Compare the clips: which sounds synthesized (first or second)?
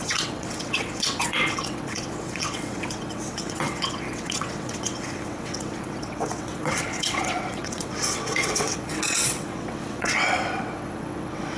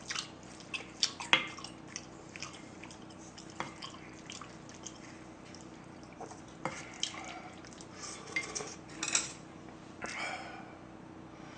first